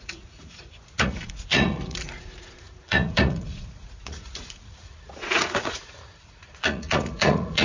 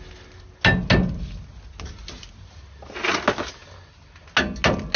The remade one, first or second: first